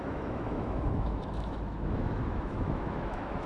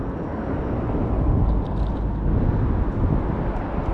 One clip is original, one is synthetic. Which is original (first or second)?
second